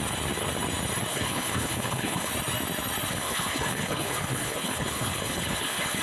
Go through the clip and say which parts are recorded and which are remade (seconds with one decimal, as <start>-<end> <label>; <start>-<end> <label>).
0.0-1.1 recorded; 1.1-2.3 remade; 2.3-3.1 recorded; 3.1-6.0 remade